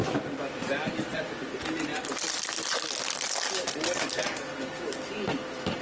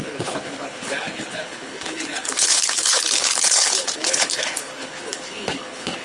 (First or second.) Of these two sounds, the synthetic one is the second